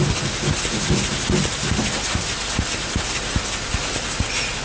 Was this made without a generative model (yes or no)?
yes